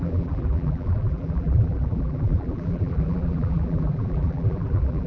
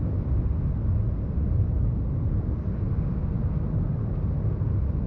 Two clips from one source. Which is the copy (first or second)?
first